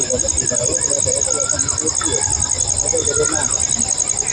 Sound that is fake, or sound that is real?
real